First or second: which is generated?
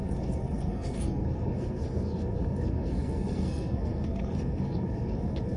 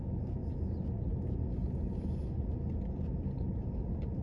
first